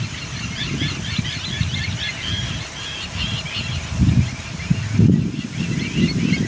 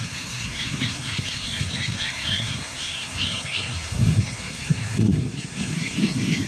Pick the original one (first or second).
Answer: first